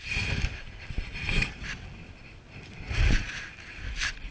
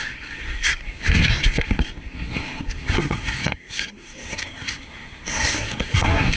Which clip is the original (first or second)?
first